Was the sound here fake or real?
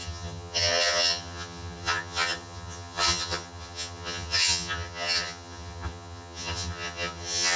fake